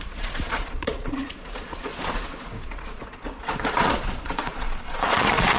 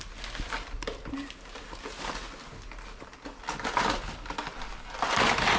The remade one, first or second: first